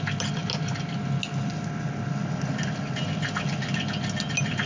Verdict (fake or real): real